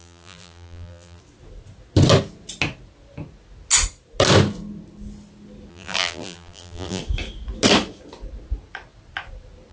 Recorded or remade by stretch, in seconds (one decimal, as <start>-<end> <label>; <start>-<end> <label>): 0.0-1.2 remade; 1.2-5.7 recorded; 5.7-7.0 remade; 7.0-9.7 recorded